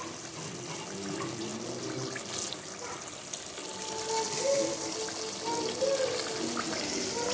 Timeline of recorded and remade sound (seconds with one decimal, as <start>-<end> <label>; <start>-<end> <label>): 0.0-7.3 recorded